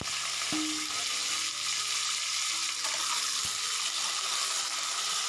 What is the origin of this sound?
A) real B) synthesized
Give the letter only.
A